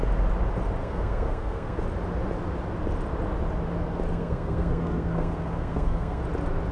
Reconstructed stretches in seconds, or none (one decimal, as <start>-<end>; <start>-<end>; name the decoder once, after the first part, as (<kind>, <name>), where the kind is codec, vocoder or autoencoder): 0.8-1.8 (codec, SNAC); 4.1-6.2